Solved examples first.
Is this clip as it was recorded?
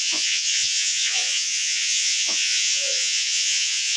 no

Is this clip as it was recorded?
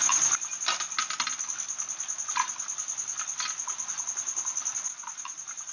yes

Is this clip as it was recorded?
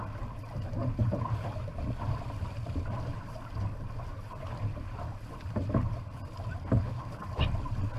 yes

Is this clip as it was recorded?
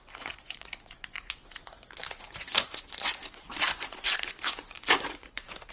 no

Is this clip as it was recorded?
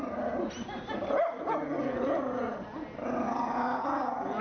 yes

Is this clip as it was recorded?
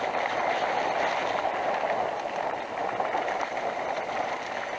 yes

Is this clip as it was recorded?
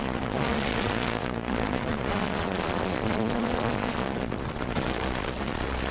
no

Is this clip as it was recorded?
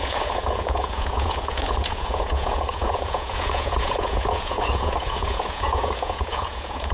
no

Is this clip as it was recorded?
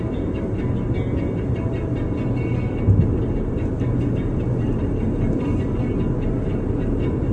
yes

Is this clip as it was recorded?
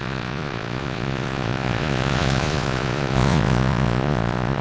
no